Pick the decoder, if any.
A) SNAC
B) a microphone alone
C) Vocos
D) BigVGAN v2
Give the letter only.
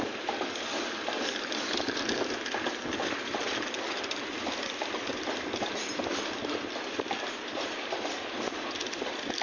D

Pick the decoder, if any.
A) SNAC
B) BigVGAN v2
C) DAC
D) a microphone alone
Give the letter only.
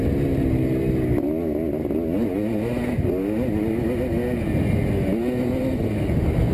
D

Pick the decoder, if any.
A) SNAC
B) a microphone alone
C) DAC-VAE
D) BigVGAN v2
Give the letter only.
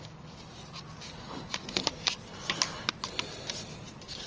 B